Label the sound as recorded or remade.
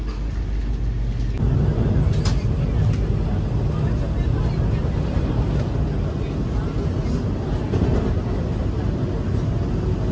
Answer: recorded